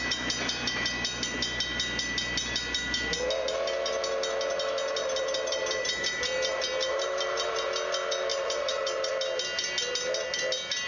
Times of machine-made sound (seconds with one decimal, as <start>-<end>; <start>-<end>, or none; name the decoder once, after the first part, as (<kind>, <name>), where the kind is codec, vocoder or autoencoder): 5.0-7.7 (vocoder, BigVGAN v2); 8.3-9.1